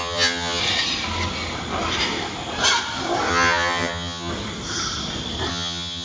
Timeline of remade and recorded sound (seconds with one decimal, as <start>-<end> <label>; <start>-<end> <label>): 0.0-0.6 remade; 0.6-3.3 recorded; 3.3-4.3 remade; 4.3-5.5 recorded; 5.5-6.0 remade